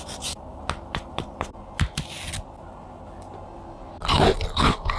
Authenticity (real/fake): real